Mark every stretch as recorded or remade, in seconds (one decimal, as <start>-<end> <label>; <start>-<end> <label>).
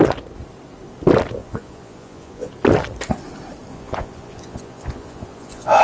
0.0-1.4 recorded; 1.4-2.5 remade; 2.5-3.7 recorded; 3.7-5.8 remade